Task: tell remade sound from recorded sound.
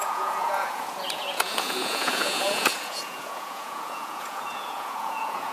remade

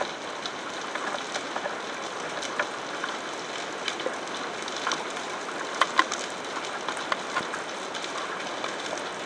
recorded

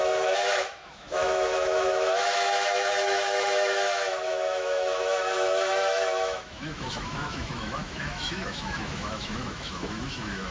remade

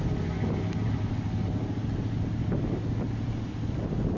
recorded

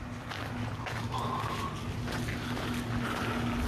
recorded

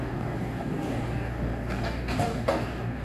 remade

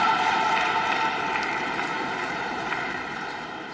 remade